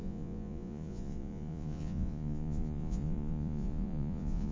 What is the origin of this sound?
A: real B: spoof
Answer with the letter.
B